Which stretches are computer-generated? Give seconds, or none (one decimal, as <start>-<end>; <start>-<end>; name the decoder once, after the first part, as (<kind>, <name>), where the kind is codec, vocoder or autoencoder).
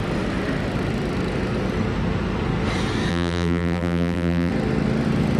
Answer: 3.1-4.5 (vocoder, BigVGAN v2)